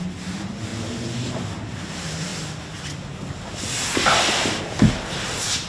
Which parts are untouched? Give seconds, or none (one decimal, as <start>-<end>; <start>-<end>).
0.0-5.7